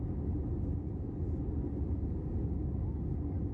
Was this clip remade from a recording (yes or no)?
no